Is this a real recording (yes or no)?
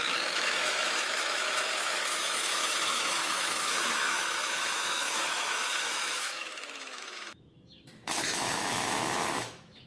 no